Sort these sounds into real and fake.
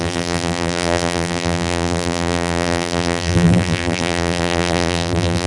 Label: fake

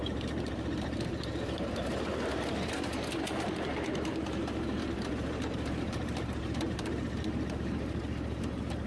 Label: fake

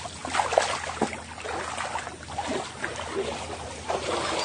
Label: real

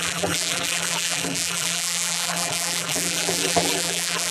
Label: fake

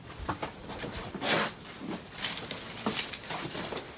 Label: fake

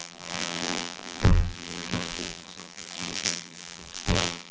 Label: fake